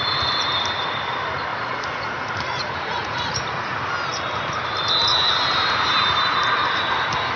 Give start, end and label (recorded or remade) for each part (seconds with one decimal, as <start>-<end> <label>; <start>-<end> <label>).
0.0-1.5 recorded; 1.5-3.3 remade; 3.3-7.4 recorded